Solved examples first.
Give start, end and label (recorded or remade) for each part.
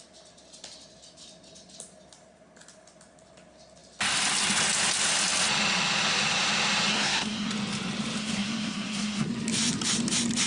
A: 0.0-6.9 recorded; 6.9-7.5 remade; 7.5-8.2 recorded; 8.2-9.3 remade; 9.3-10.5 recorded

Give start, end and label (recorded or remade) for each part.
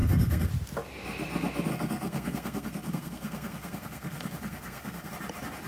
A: 0.0-0.5 remade; 0.5-1.7 recorded; 1.7-5.1 remade; 5.1-5.7 recorded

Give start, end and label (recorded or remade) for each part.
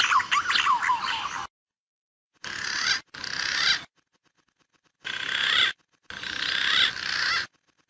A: 0.0-7.9 recorded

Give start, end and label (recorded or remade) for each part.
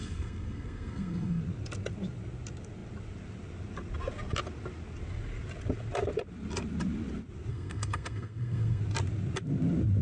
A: 0.0-1.4 remade; 1.4-7.5 recorded; 7.5-8.8 remade; 8.8-10.0 recorded